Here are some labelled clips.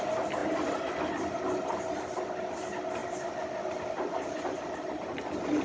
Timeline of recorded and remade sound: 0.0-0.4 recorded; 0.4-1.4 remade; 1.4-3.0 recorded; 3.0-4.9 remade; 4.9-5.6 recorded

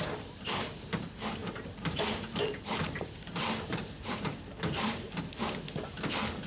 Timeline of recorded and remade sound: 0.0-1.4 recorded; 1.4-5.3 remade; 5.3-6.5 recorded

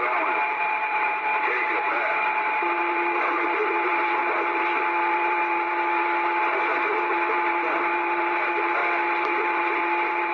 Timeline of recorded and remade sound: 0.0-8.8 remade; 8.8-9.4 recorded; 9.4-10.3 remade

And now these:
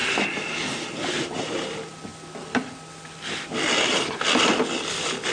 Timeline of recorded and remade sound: 0.0-5.3 recorded

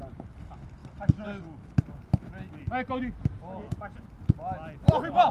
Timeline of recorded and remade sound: 0.0-5.3 recorded